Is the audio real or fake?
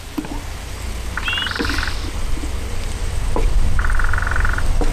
real